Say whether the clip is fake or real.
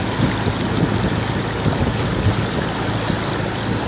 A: real